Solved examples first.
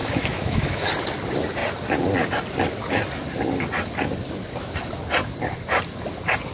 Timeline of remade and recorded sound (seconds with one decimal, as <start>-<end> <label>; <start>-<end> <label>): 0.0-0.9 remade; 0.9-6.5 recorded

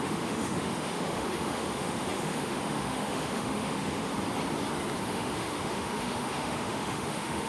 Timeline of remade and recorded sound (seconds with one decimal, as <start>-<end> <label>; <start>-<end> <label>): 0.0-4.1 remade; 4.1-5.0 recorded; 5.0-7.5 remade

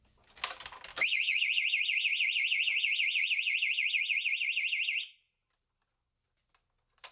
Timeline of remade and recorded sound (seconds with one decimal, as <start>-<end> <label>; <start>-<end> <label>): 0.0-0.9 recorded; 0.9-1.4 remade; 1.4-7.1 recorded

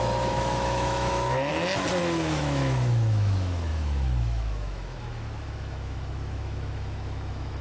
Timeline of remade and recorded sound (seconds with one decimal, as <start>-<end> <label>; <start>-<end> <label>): 0.0-1.5 remade; 1.5-2.0 recorded; 2.0-7.6 remade

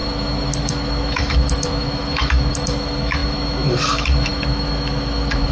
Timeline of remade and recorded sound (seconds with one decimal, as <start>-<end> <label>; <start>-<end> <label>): 0.0-5.5 remade

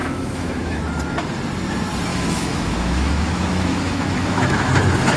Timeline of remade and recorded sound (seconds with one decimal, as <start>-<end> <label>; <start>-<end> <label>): 0.0-0.8 remade; 0.8-2.1 recorded; 2.1-4.7 remade; 4.7-5.2 recorded